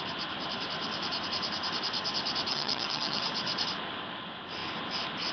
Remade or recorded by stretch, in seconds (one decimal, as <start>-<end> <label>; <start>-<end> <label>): 0.0-2.5 recorded; 2.5-3.2 remade; 3.2-5.3 recorded

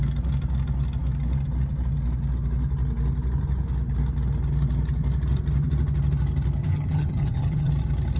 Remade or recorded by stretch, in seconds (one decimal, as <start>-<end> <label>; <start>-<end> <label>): 0.0-6.6 recorded; 6.6-7.7 remade; 7.7-8.2 recorded

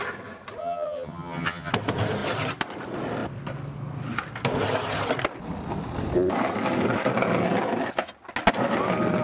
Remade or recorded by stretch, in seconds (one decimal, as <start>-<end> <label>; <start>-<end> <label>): 0.0-0.6 recorded; 0.6-1.7 remade; 1.7-9.2 recorded

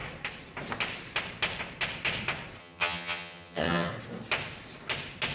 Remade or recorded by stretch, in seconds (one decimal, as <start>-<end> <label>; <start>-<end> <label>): 0.0-2.6 recorded; 2.6-3.9 remade; 3.9-5.3 recorded

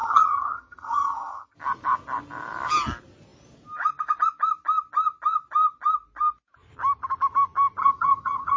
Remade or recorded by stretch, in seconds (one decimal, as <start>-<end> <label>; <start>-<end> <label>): 0.0-1.5 remade; 1.5-7.8 recorded; 7.8-8.6 remade

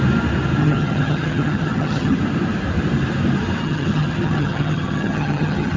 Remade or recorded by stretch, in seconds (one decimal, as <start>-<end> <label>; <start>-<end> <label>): 0.0-0.6 recorded; 0.6-2.2 remade; 2.2-3.6 recorded; 3.6-5.8 remade